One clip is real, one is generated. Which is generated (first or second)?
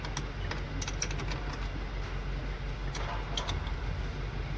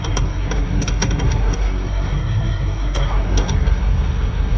second